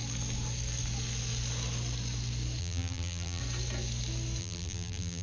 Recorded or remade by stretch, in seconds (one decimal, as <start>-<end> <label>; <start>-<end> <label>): 0.0-2.6 recorded; 2.6-3.4 remade; 3.4-4.4 recorded; 4.4-5.2 remade